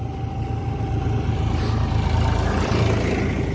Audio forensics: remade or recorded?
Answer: recorded